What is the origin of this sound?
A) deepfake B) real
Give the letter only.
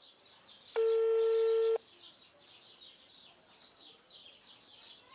B